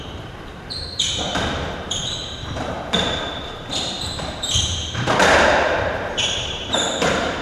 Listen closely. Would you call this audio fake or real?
fake